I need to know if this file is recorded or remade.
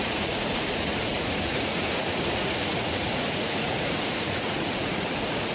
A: remade